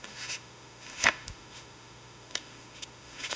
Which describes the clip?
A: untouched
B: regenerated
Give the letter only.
B